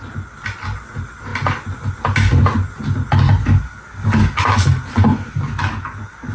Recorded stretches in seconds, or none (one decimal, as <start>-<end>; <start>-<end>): 0.0-3.4; 4.4-5.1